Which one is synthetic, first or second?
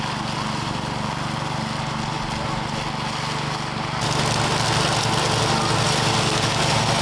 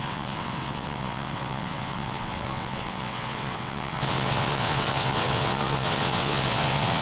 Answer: second